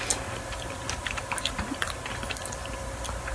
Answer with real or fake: real